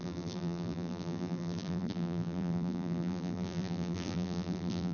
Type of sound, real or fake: fake